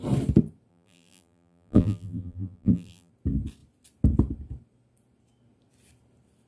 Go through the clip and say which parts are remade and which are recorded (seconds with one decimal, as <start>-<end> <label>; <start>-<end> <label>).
0.0-0.7 recorded; 0.7-3.1 remade; 3.1-6.5 recorded